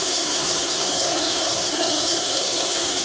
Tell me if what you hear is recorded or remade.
remade